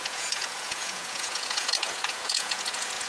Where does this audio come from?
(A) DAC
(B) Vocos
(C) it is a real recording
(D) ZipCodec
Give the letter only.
B